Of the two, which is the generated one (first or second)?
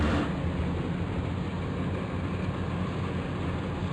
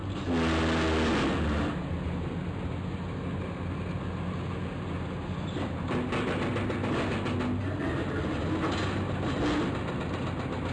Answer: first